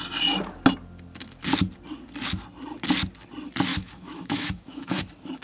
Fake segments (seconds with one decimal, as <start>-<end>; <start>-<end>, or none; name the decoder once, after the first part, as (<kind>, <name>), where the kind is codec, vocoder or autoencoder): 3.7-5.0 (autoencoder, DAC-VAE)